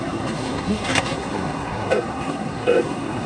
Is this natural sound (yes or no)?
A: no